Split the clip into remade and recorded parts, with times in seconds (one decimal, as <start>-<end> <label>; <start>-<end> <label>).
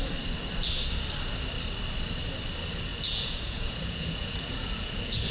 0.0-2.9 recorded; 2.9-5.3 remade